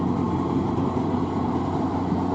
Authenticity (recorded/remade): remade